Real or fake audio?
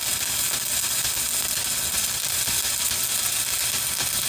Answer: real